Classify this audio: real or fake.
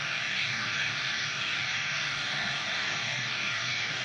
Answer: fake